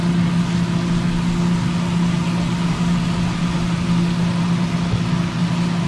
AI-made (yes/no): no